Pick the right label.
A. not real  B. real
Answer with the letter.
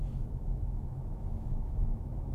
A